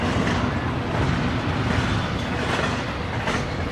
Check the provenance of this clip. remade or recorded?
recorded